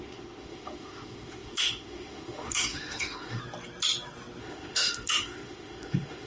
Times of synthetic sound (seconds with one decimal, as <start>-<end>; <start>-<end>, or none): 0.0-3.4; 4.4-6.3